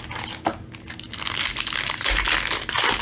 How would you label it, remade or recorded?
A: recorded